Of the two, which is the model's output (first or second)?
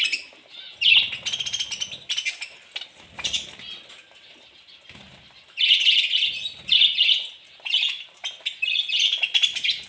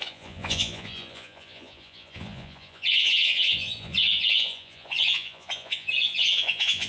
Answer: second